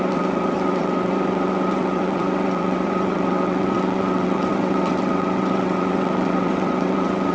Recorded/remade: remade